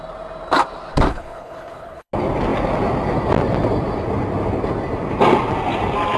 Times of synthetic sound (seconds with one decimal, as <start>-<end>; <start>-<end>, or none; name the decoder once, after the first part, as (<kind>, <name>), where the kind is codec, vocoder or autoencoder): 1.1-2.1 (codec, HILCodec)